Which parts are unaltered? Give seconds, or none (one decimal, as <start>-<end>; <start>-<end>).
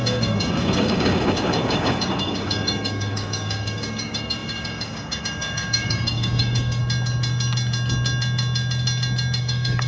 6.8-9.4